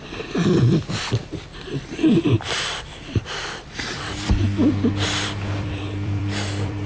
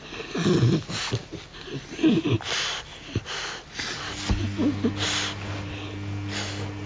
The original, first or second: second